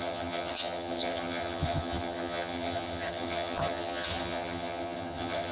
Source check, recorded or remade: remade